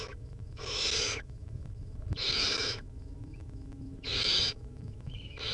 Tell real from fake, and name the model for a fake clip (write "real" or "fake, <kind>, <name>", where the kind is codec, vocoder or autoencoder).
fake, autoencoder, DAC-VAE